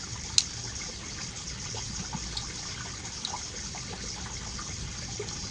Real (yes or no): yes